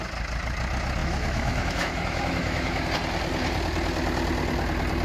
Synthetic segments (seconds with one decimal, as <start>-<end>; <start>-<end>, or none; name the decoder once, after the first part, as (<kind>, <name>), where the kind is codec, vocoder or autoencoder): 1.0-2.9 (autoencoder, DAC-VAE)